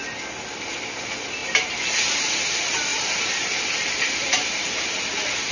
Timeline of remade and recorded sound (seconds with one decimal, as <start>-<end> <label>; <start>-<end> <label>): 0.0-1.4 recorded; 1.4-2.5 remade; 2.5-2.9 recorded; 2.9-5.0 remade; 5.0-5.5 recorded